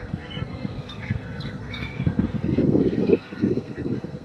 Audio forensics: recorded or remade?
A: remade